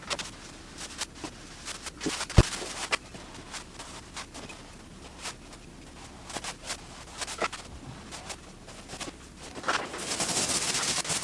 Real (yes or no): yes